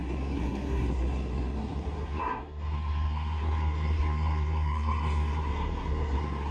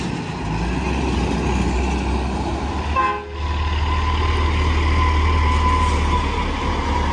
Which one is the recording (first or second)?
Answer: second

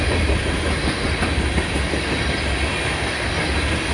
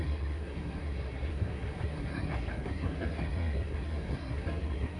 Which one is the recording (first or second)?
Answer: first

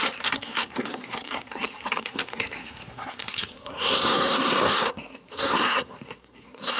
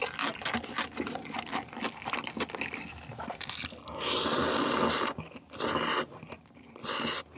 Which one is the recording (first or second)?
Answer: second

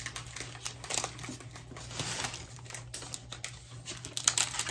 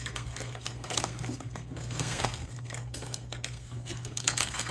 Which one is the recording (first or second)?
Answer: first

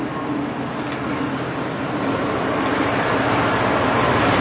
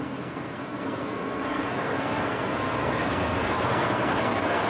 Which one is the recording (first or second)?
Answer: first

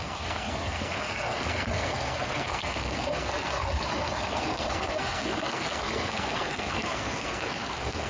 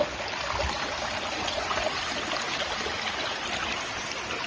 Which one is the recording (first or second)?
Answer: second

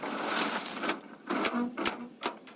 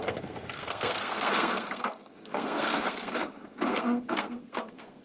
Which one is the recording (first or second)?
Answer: first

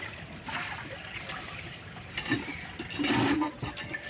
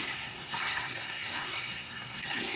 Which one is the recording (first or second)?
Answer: first